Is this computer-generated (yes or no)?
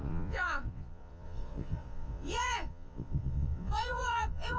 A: yes